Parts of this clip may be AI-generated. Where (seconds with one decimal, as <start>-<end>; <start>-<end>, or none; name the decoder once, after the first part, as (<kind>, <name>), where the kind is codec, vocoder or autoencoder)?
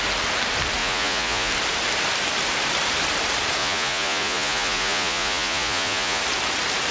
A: 0.8-1.5 (vocoder, Vocos); 3.6-6.2